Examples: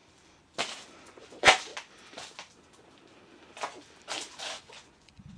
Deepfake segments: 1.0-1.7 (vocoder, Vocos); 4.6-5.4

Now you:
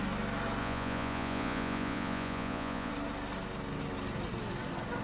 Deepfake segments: 0.6-2.9 (vocoder, Vocos)

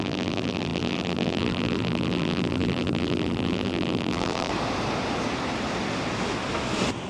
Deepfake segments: 0.0-4.5 (vocoder, BigVGAN v2)

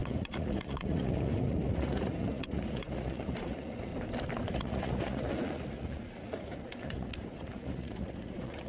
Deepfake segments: 0.0-3.9 (vocoder, Vocos); 4.5-8.7

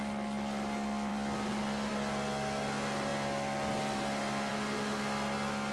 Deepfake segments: none

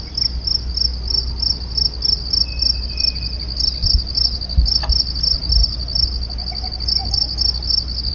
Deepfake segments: none

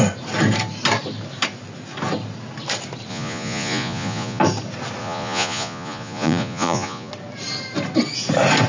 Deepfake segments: 3.1-4.4 (vocoder, Vocos); 5.0-7.1